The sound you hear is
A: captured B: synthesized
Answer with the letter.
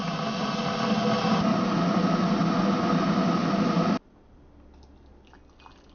A